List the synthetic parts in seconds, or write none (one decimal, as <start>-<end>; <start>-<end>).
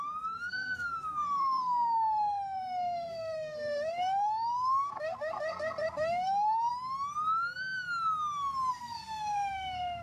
0.0-6.7; 8.7-10.0